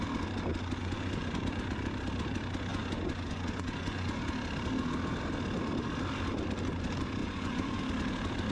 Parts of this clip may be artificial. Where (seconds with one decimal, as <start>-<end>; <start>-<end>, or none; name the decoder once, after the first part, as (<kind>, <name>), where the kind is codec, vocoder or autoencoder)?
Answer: 0.8-1.6 (vocoder, Vocos); 2.7-4.2; 7.2-7.8